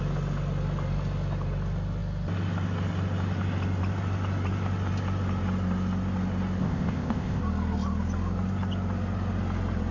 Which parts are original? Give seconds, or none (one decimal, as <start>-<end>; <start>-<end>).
0.0-6.6; 7.4-9.9